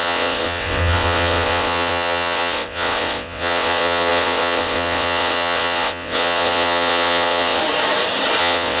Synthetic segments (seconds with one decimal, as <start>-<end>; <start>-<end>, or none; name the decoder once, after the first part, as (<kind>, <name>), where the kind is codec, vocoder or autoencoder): 0.0-7.6 (vocoder, WaveNeXt); 8.4-8.8

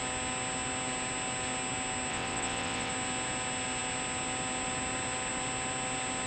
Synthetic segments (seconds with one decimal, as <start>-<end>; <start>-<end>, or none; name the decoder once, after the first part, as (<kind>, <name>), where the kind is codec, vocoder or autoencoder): 2.1-2.9 (vocoder, WaveNeXt)

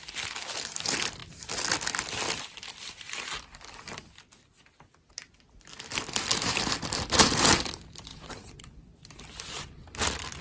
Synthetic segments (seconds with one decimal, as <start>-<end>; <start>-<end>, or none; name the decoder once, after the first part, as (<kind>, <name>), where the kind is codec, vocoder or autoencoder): 8.1-8.6 (vocoder, WaveNeXt)